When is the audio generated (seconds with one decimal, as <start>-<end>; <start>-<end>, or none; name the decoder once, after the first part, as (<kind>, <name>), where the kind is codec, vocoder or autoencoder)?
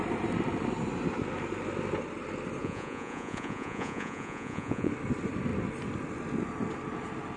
2.6-4.9 (vocoder, Vocos)